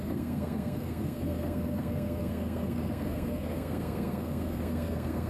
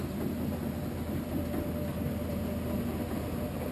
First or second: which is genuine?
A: second